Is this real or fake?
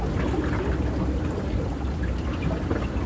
real